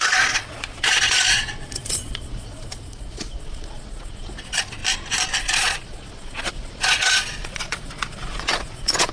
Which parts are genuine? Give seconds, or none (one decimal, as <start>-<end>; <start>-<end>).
4.8-5.4